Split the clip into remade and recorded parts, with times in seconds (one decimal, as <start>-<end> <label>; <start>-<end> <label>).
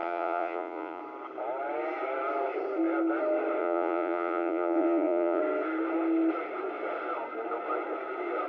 0.0-1.0 remade; 1.0-3.6 recorded; 3.6-5.4 remade; 5.4-8.5 recorded